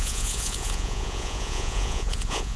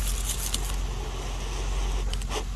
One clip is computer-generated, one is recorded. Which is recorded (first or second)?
second